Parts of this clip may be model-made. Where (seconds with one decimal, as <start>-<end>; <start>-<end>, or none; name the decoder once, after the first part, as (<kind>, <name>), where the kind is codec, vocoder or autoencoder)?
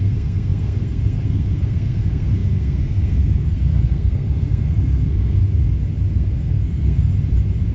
0.0-5.4 (codec, SNAC); 6.1-7.1